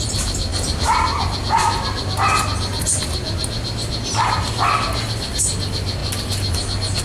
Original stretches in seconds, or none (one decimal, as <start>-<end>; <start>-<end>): 0.0-7.0